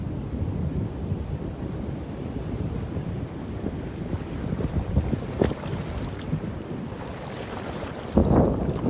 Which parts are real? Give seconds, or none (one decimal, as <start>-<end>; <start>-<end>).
0.0-8.9